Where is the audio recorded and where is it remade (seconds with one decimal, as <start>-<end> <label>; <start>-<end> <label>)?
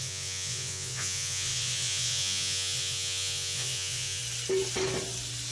0.0-4.2 remade; 4.2-5.5 recorded